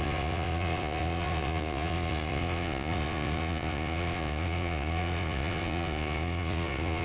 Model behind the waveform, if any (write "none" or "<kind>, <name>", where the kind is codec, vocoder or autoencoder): vocoder, Vocos